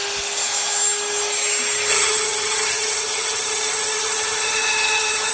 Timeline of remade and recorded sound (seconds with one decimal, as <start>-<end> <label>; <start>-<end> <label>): 0.0-1.9 recorded; 1.9-5.3 remade